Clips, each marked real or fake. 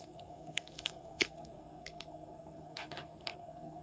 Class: fake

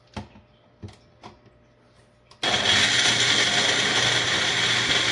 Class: real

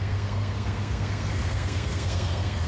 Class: fake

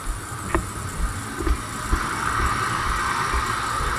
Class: real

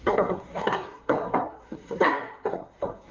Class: fake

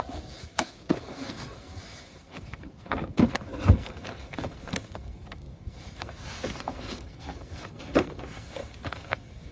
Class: fake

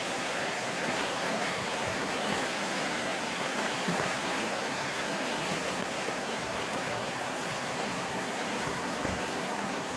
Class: fake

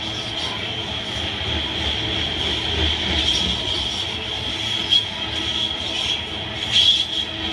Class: real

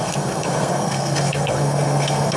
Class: fake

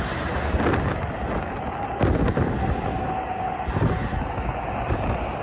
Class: real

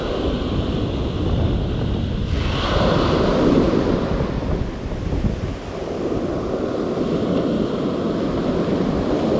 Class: real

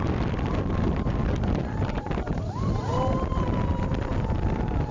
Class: real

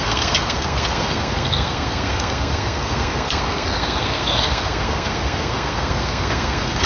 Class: fake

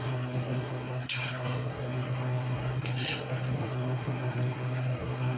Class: fake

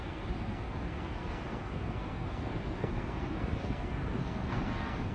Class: fake